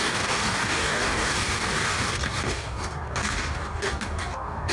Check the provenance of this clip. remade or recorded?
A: remade